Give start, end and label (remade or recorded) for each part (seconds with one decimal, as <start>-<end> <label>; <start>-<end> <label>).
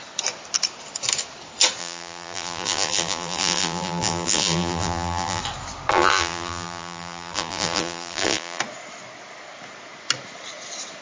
0.0-1.8 recorded; 1.8-5.4 remade; 5.4-5.9 recorded; 5.9-8.6 remade; 8.6-11.0 recorded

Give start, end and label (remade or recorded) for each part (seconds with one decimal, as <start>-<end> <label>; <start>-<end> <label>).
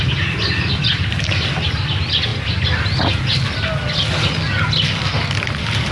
0.0-5.9 recorded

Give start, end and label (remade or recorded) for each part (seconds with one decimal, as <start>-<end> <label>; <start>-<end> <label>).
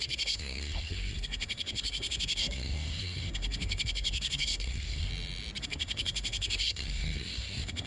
0.0-5.1 remade; 5.1-5.6 recorded; 5.6-7.9 remade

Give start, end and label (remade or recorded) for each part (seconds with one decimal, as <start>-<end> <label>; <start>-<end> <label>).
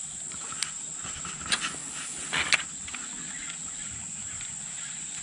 0.0-5.2 recorded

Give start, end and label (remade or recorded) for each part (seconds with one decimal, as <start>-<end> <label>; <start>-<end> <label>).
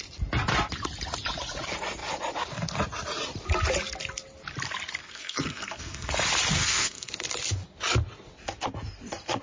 0.0-5.0 recorded; 5.0-6.1 remade; 6.1-6.6 recorded; 6.6-7.1 remade; 7.1-9.4 recorded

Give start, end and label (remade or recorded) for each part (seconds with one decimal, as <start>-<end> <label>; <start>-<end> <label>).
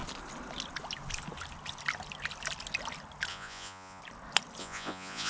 0.0-3.3 recorded; 3.3-4.0 remade; 4.0-4.6 recorded; 4.6-5.3 remade